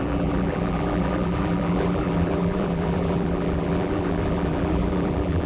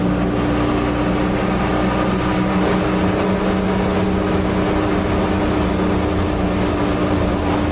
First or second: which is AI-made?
first